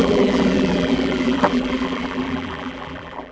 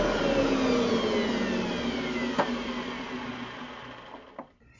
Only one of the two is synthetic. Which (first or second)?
first